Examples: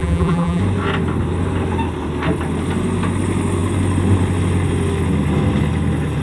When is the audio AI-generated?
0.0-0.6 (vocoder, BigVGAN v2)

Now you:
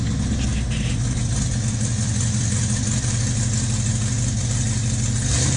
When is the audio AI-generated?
none

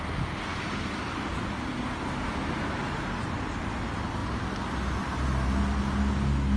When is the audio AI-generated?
none

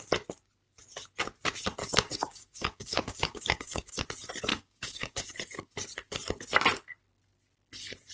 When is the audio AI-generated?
1.8-4.0 (codec, DAC); 4.5-5.3

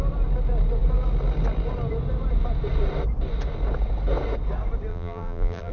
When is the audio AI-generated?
4.9-5.7 (vocoder, BigVGAN v2)

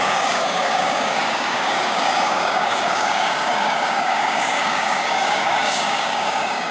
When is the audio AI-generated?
0.0-6.7 (codec, DAC)

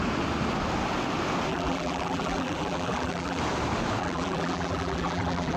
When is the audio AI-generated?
1.5-3.4 (vocoder, BigVGAN v2); 4.0-5.6